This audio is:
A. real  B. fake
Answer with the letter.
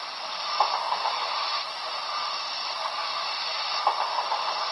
A